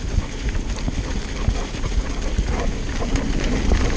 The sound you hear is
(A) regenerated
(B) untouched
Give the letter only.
B